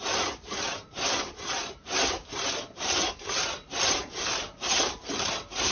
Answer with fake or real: fake